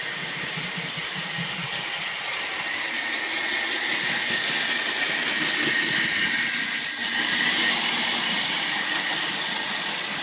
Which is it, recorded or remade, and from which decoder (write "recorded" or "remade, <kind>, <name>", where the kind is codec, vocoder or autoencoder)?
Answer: recorded